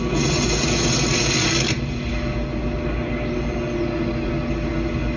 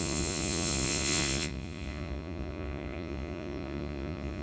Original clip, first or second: first